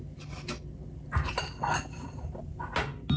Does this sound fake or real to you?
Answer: real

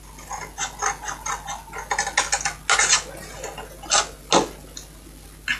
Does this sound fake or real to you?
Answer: real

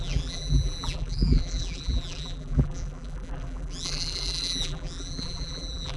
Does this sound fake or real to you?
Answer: fake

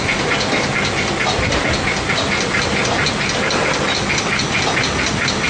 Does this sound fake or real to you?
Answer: real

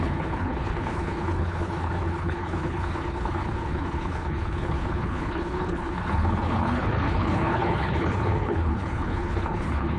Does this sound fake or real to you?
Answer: fake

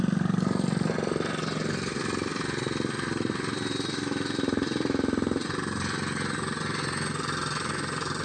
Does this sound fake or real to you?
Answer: real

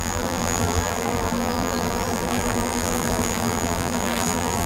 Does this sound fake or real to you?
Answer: fake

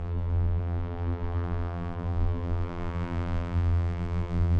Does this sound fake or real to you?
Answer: fake